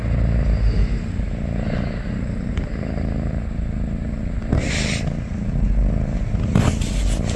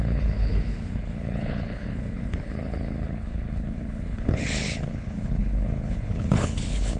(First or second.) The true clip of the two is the first